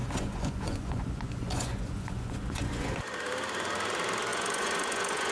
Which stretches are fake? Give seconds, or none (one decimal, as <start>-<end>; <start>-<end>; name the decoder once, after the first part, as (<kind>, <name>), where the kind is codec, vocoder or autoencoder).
0.0-3.0 (vocoder, Vocos); 4.3-5.3